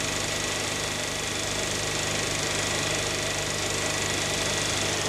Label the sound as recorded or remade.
recorded